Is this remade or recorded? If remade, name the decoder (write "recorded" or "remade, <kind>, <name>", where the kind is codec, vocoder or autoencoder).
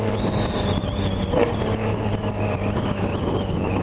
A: remade, vocoder, BigVGAN v2